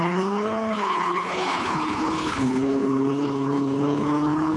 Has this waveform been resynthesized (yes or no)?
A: yes